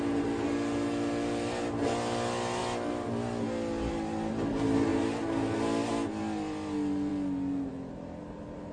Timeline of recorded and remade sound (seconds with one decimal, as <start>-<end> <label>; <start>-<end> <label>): 0.0-8.7 recorded